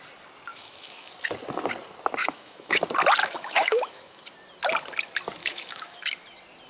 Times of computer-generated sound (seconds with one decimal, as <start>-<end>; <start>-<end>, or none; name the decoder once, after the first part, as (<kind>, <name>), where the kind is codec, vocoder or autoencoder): 0.5-1.1 (autoencoder, DAC-VAE); 2.2-2.8; 3.2-4.2; 5.4-6.0